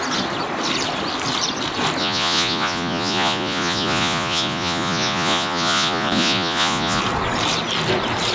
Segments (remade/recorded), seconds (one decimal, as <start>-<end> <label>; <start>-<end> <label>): 0.0-2.0 recorded; 2.0-7.0 remade; 7.0-8.3 recorded

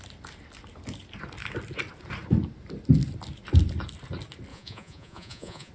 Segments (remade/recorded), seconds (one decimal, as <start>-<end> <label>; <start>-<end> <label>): 0.0-4.5 recorded; 4.5-5.7 remade

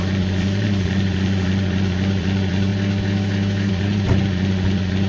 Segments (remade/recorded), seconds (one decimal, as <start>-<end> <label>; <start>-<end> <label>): 0.0-2.7 remade; 2.7-3.7 recorded; 3.7-5.1 remade

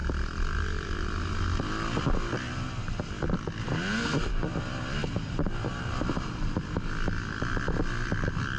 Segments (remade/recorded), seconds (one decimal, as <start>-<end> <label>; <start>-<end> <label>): 0.0-8.6 recorded

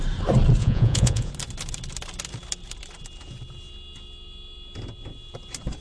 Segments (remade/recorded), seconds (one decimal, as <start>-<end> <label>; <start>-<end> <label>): 0.0-0.6 recorded; 0.6-1.3 remade; 1.3-5.8 recorded

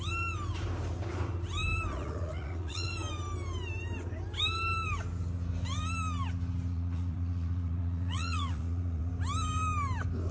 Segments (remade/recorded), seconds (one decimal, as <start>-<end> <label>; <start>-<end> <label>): 0.0-1.9 recorded; 1.9-2.9 remade; 2.9-6.7 recorded; 6.7-9.1 remade; 9.1-10.3 recorded

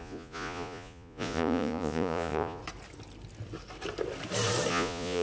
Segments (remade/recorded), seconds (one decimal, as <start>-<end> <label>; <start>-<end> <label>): 0.0-2.6 remade; 2.6-4.7 recorded; 4.7-5.2 remade

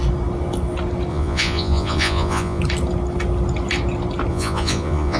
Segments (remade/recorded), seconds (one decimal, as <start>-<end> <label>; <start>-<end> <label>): 0.0-1.1 recorded; 1.1-2.6 remade; 2.6-4.3 recorded; 4.3-5.2 remade